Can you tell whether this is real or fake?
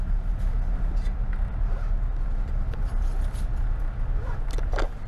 real